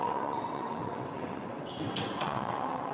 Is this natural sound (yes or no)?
no